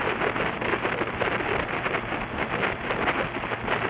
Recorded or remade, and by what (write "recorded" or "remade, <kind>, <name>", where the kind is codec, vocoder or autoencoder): recorded